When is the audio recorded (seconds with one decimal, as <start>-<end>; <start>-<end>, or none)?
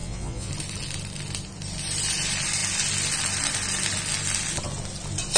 0.5-5.4